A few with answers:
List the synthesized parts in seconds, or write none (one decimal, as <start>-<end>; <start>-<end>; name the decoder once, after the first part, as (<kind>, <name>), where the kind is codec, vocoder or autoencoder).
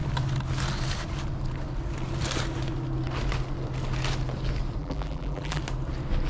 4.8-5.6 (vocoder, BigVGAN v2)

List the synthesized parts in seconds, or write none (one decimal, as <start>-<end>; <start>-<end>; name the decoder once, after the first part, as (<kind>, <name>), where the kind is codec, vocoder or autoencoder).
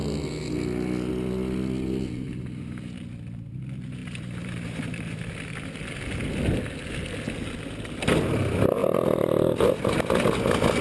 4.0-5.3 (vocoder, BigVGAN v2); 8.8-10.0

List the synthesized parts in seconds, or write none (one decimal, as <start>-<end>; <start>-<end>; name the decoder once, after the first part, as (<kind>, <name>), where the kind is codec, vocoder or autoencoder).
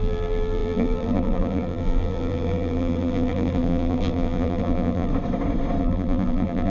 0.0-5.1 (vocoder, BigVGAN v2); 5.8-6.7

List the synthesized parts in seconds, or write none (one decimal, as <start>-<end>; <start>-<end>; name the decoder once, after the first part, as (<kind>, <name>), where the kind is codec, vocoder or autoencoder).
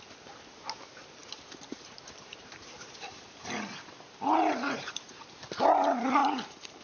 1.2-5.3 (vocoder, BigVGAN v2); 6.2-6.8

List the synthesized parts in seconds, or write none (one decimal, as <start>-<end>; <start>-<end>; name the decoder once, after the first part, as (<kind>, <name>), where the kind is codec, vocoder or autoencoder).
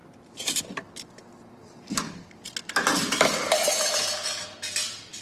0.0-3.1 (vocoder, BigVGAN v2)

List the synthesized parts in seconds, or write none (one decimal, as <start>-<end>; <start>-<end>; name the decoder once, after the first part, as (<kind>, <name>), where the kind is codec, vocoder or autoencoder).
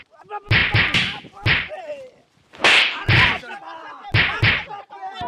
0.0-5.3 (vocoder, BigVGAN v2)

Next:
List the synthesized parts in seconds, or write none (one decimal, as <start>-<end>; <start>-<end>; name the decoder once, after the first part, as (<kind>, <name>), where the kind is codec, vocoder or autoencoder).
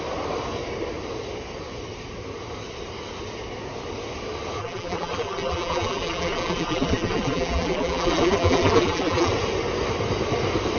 4.6-9.3 (vocoder, BigVGAN v2)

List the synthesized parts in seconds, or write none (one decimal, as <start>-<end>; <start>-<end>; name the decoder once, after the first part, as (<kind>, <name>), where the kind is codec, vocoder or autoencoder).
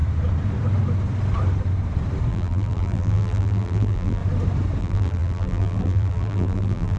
2.3-4.2 (vocoder, BigVGAN v2); 4.8-7.0